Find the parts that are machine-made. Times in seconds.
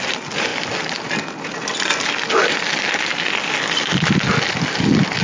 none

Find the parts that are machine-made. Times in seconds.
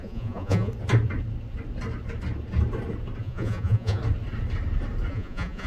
0.0-0.7 (vocoder, Vocos); 3.2-4.0; 5.1-5.7